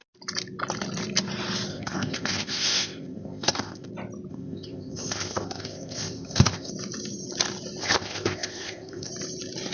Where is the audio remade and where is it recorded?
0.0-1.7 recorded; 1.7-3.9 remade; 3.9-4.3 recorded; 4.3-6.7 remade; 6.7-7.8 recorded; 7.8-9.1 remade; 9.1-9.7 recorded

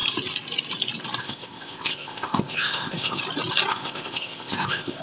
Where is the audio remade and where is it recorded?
0.0-1.2 recorded; 1.2-3.2 remade; 3.2-3.7 recorded; 3.7-5.0 remade